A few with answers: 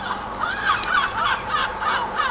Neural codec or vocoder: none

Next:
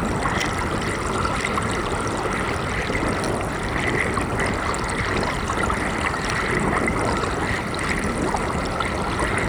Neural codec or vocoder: vocoder, BigVGAN v2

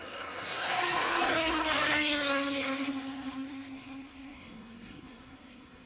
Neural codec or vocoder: codec, SNAC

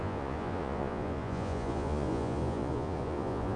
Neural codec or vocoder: vocoder, Vocos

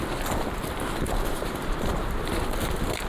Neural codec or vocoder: vocoder, BigVGAN v2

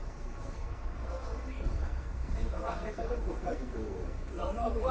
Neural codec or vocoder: codec, SNAC